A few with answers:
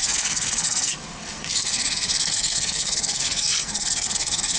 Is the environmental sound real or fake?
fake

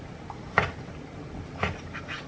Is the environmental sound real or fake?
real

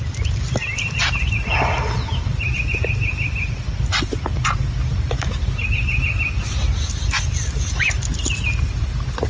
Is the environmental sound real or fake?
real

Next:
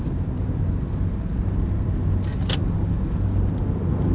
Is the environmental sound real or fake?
real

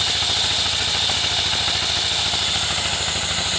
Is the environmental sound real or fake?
real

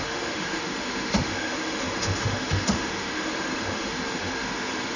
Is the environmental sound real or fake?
fake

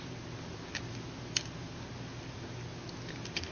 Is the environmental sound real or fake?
real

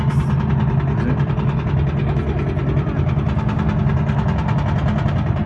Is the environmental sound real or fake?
real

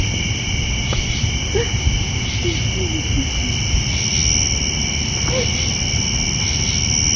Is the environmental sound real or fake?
real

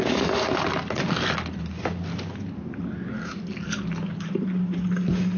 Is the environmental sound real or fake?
real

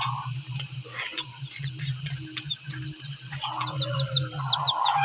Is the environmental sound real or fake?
real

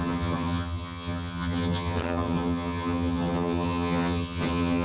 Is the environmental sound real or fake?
fake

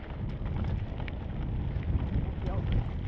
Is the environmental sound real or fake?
real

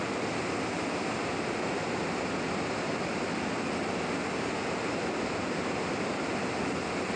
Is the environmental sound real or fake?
real